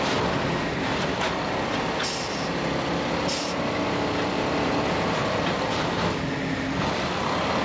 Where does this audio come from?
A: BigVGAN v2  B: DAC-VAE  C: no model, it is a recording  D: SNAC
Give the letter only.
C